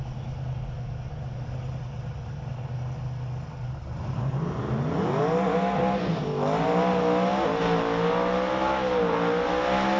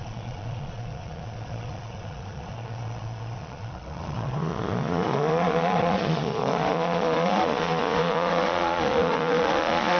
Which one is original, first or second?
first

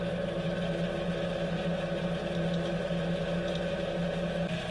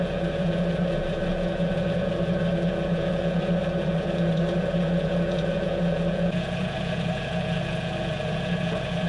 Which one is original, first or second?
first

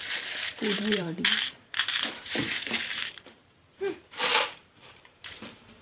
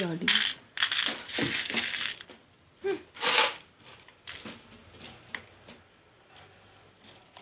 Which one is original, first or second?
second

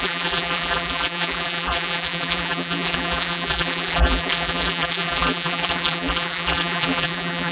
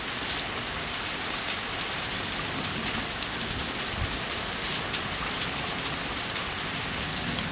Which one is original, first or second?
second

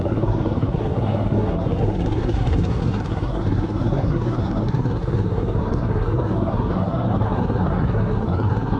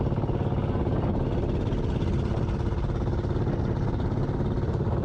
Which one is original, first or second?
second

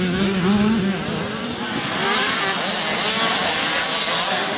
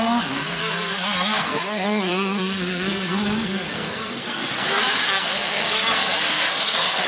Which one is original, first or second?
first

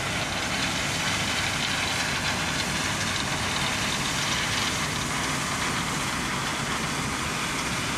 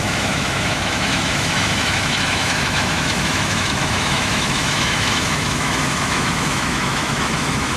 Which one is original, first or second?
first